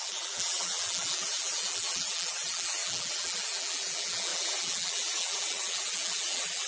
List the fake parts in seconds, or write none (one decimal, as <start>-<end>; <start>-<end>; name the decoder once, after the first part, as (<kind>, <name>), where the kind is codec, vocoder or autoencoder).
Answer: 0.0-6.7 (vocoder, BigVGAN v2)